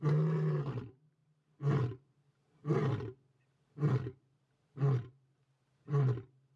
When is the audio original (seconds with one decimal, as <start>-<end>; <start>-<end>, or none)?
0.0-6.6